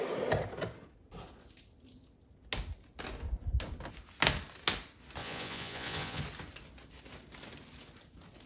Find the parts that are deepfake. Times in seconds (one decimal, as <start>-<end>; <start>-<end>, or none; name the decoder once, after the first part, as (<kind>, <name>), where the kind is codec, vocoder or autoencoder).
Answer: 5.2-6.2 (vocoder, Vocos)

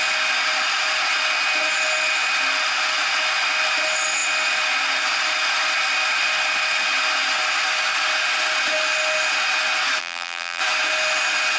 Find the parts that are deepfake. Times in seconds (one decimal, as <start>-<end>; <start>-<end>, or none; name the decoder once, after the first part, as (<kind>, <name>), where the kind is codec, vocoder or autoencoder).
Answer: 10.0-10.6 (vocoder, BigVGAN v2)

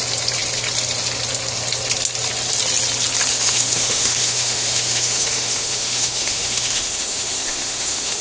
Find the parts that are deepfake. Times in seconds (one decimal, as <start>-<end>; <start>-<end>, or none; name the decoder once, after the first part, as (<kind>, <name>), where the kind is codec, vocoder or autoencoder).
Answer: 3.3-8.2 (autoencoder, DAC-VAE)

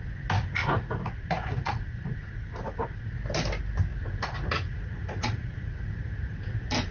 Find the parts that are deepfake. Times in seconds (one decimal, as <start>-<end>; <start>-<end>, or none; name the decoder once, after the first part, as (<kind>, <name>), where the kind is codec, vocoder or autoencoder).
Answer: 0.6-3.1 (vocoder, Vocos); 3.9-6.4

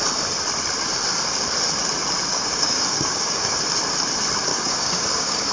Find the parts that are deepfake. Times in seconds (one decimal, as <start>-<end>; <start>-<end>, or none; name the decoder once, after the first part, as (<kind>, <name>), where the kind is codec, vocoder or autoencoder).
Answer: 2.3-3.6 (codec, DAC); 4.5-5.5

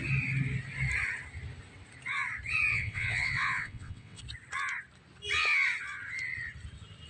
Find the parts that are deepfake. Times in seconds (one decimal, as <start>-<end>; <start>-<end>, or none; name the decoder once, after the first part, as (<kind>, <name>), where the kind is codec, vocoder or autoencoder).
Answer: 2.7-4.2 (vocoder, WaveNeXt)